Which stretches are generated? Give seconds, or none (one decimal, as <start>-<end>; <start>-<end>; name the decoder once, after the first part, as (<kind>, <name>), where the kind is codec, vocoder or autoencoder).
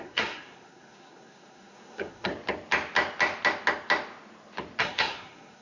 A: 0.0-2.3 (codec, SNAC); 4.8-5.6